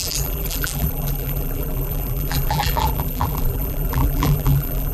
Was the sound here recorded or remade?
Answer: remade